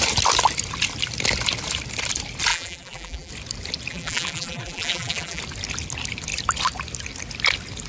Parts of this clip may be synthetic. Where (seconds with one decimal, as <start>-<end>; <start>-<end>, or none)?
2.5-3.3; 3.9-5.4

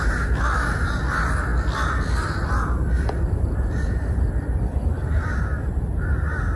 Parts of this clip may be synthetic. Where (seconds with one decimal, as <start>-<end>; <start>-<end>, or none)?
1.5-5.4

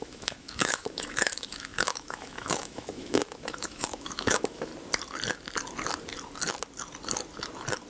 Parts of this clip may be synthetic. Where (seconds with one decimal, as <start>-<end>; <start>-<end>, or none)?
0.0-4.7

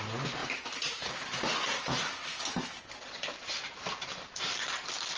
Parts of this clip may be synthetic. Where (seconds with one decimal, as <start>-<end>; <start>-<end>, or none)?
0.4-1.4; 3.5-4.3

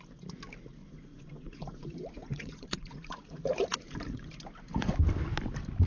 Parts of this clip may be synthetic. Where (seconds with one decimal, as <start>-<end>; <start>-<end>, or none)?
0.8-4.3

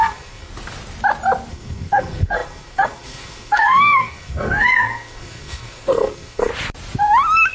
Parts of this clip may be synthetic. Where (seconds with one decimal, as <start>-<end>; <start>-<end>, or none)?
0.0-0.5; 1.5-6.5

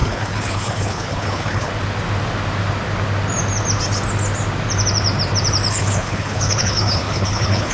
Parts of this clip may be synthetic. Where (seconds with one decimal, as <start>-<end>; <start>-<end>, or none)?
0.0-1.7; 5.7-7.7